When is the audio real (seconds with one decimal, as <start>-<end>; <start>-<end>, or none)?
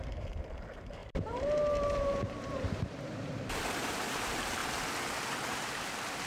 4.6-5.6